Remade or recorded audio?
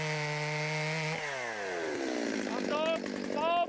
recorded